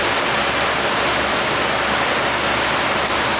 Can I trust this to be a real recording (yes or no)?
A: yes